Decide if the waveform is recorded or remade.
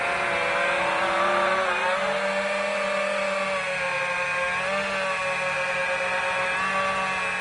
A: recorded